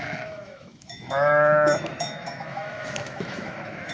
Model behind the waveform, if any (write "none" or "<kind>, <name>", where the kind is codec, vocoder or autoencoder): autoencoder, DAC-VAE